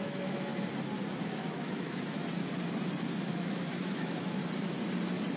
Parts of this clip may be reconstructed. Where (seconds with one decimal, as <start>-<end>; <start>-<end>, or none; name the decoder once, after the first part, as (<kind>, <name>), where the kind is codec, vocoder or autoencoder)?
0.0-0.5 (autoencoder, DAC-VAE); 1.2-2.2; 3.3-4.4